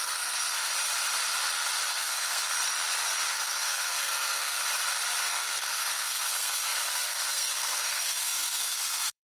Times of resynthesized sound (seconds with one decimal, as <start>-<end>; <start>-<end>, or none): 0.0-0.7; 1.9-2.5; 3.3-4.6; 5.2-9.2